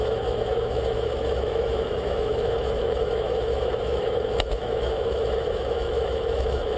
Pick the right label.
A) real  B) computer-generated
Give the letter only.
B